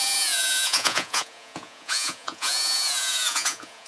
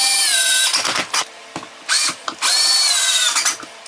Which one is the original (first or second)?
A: second